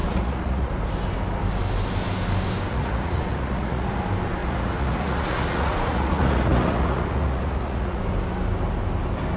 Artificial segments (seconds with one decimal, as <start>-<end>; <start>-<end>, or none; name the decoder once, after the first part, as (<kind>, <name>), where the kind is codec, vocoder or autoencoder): 0.0-0.7 (vocoder, Vocos); 2.7-4.0; 4.4-8.0